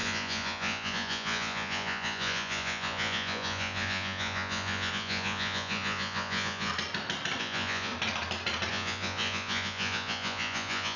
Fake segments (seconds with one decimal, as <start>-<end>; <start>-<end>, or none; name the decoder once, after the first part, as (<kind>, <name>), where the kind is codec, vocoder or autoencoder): 0.0-6.7 (vocoder, Vocos); 7.4-7.9; 8.7-11.0